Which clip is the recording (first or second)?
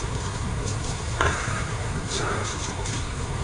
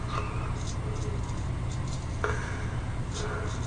second